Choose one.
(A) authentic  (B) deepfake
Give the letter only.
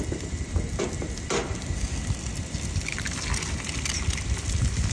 A